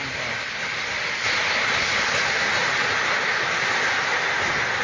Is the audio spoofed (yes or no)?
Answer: no